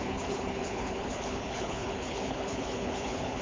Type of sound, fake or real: fake